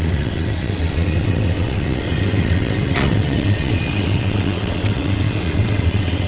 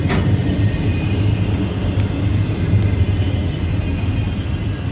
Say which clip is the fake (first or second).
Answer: first